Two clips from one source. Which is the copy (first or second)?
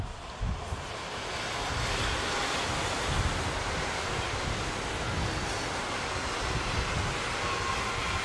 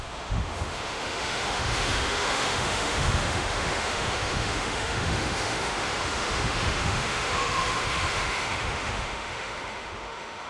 second